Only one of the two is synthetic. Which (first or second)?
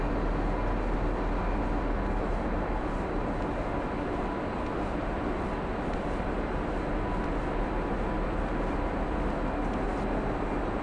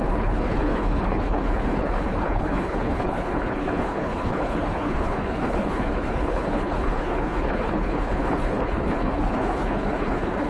second